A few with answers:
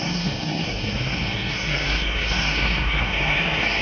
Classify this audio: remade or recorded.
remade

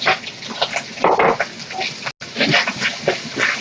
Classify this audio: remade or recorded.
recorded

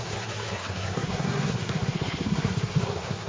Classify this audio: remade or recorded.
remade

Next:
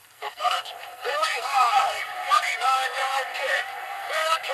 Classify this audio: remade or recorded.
remade